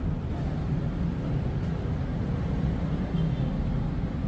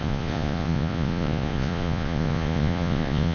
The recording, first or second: first